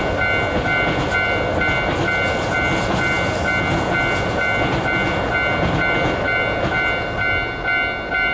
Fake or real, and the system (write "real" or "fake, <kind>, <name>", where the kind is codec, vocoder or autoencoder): real